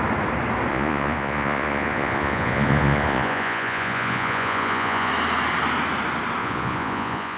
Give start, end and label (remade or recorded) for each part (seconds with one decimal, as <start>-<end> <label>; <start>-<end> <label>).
0.0-0.7 recorded; 0.7-5.1 remade; 5.1-6.4 recorded; 6.4-7.4 remade